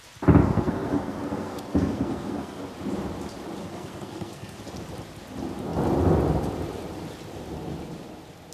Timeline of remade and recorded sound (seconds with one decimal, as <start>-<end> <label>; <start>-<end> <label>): 0.0-0.4 recorded; 0.4-2.6 remade; 2.6-3.6 recorded; 3.6-4.6 remade; 4.6-8.5 recorded